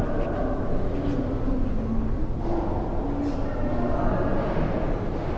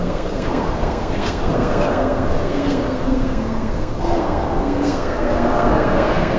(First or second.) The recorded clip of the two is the first